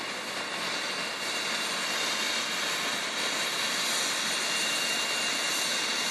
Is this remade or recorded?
recorded